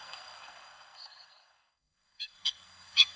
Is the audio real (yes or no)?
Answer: no